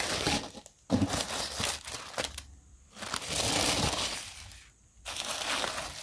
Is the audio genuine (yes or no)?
yes